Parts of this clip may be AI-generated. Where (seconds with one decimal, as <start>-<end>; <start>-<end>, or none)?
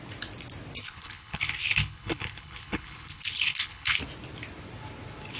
0.8-4.0